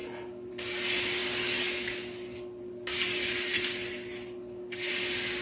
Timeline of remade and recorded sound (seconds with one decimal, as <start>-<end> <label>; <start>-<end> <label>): 0.0-5.4 recorded